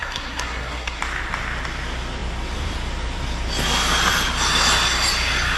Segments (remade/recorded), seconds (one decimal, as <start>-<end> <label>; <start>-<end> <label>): 0.0-1.0 remade; 1.0-5.6 recorded